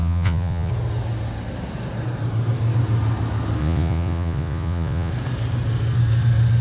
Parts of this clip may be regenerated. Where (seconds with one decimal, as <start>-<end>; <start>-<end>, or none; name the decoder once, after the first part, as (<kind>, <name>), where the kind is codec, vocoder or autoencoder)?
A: 0.0-0.7 (vocoder, Vocos); 3.6-5.1